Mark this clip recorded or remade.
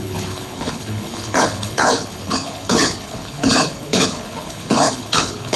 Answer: remade